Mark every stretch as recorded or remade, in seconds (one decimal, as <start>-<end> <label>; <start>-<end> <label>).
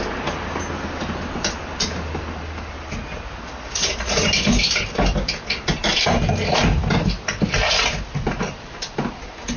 0.0-9.6 recorded